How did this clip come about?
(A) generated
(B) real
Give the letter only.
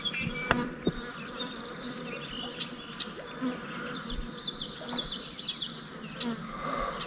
B